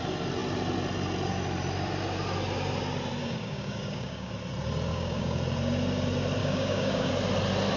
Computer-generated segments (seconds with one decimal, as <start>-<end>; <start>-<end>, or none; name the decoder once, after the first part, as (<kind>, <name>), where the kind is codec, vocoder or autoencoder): 3.2-4.3 (codec, DAC); 4.9-5.4; 6.4-7.1